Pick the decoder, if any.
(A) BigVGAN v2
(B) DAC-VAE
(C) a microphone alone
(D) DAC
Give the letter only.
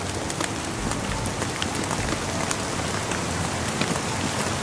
C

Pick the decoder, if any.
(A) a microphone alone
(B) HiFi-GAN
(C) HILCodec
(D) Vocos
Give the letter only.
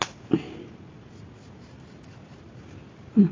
A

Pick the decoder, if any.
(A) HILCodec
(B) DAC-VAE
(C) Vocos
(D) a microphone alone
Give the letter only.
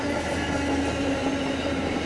D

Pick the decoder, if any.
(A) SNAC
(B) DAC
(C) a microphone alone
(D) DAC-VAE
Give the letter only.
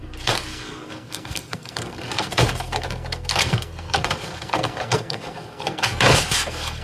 A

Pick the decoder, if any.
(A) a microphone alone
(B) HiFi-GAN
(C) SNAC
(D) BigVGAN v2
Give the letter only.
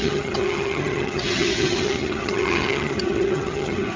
B